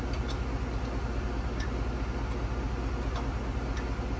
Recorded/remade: recorded